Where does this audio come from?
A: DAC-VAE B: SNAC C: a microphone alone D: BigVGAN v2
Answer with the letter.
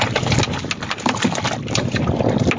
C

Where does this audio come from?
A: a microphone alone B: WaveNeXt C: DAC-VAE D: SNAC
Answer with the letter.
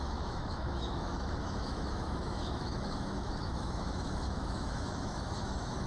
C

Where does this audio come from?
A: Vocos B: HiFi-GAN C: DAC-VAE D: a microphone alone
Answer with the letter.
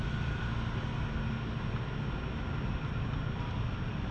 D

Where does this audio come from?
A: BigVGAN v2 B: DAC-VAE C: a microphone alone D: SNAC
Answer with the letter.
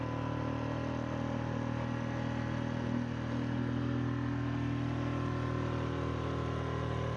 C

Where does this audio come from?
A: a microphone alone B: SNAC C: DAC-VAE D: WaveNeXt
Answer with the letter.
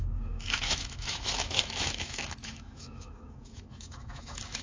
C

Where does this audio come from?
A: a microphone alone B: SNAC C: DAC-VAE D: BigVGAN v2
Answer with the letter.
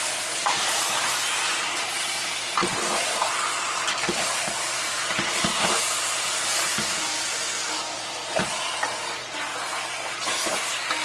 A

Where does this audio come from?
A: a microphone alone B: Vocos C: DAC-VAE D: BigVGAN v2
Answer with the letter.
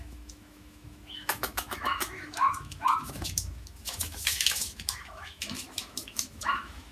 C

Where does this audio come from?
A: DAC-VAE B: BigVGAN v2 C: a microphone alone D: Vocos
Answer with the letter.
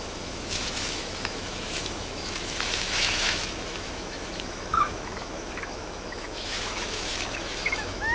A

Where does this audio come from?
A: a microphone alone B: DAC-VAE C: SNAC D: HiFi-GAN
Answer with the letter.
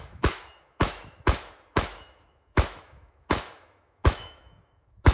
B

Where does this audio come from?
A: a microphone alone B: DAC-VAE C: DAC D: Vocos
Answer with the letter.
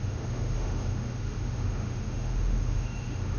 B